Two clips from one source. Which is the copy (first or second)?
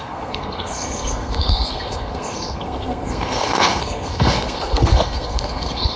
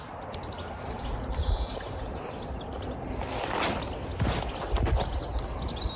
first